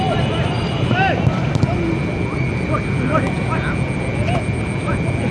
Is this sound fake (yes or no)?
no